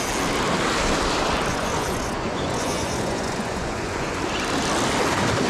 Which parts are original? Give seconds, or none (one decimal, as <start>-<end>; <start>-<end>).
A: 0.0-1.5; 4.2-5.5